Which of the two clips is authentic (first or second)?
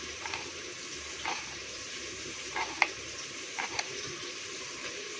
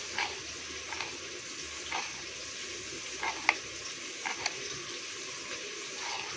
second